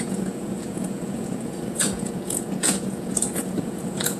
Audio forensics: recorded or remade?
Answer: remade